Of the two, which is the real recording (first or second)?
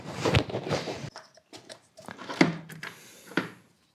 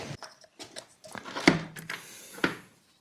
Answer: second